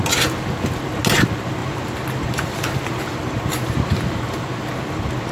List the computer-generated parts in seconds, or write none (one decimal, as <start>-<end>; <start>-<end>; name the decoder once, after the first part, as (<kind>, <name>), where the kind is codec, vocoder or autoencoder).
1.6-4.8 (vocoder, BigVGAN v2)